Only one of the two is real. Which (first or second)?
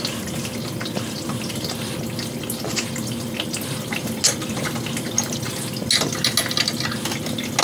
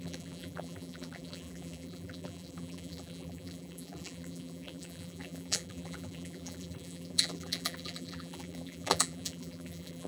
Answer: first